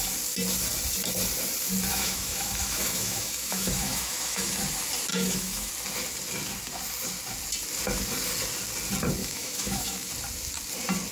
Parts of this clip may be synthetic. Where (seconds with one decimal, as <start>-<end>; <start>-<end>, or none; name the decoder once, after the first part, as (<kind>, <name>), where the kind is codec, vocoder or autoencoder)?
1.9-4.5 (autoencoder, DAC-VAE); 5.1-5.7; 9.2-10.1